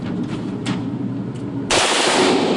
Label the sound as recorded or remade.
remade